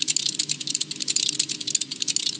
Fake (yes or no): no